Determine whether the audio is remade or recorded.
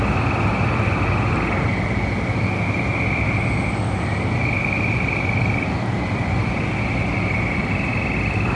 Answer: recorded